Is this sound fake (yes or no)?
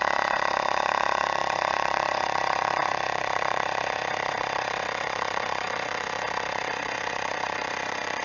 yes